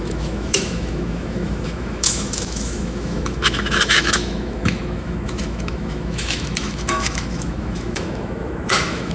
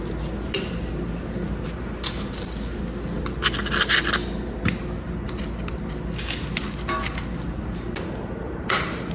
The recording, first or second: second